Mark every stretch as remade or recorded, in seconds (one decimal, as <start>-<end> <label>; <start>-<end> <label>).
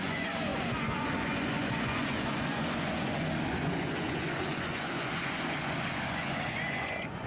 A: 0.0-7.3 remade